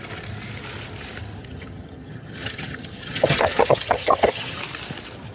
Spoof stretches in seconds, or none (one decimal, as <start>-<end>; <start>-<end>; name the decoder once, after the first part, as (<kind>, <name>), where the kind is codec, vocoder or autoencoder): 1.4-4.6 (vocoder, HiFi-GAN)